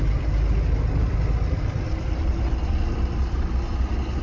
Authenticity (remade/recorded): recorded